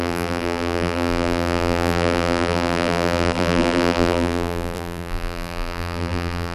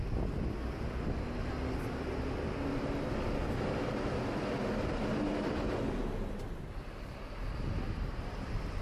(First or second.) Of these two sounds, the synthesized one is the first